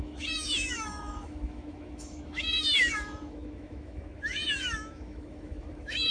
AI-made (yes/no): yes